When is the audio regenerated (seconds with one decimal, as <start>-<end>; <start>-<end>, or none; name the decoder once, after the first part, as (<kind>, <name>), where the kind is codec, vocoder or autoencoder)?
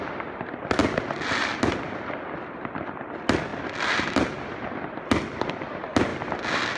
0.8-2.5 (vocoder, BigVGAN v2); 3.5-5.0